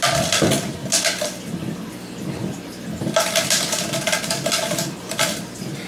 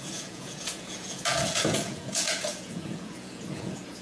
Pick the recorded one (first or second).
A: first